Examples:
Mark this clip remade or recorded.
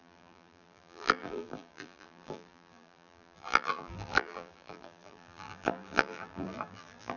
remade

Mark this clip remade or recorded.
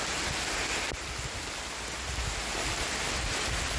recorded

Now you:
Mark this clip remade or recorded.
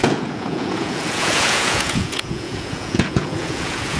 remade